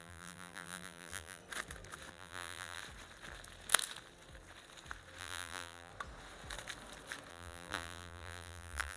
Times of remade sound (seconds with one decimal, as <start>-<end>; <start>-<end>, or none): 0.0-1.4; 2.1-2.8; 5.2-5.9; 7.3-9.0